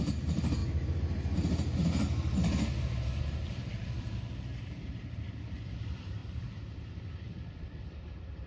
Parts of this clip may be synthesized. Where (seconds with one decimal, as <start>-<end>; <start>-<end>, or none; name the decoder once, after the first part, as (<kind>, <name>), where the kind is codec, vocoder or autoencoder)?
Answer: 0.0-0.6 (vocoder, BigVGAN v2); 3.2-8.5